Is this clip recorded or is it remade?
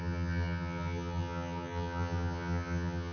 remade